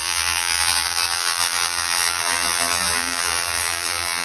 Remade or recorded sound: remade